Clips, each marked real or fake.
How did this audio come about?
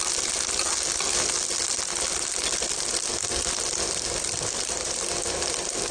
real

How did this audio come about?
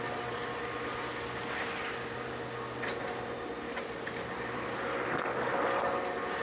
real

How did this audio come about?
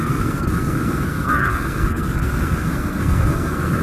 fake